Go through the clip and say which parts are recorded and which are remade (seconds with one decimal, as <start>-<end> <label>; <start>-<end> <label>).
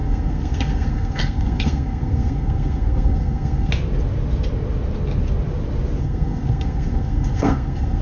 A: 0.0-3.7 remade; 3.7-6.0 recorded; 6.0-8.0 remade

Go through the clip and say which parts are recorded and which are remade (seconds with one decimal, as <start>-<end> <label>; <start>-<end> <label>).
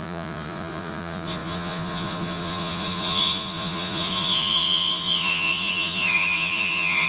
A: 0.0-7.1 remade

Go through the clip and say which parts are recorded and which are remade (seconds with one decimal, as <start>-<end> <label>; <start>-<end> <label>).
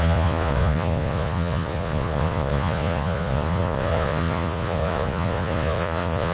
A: 0.0-6.3 remade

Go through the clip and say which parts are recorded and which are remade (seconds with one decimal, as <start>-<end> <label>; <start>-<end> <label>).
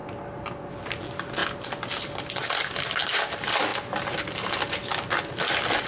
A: 0.0-5.9 recorded